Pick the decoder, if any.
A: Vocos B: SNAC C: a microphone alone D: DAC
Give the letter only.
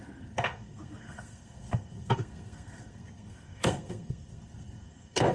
B